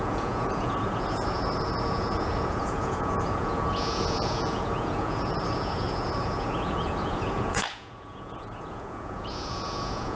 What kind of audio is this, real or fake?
fake